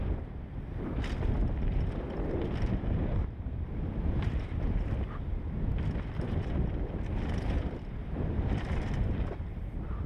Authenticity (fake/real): fake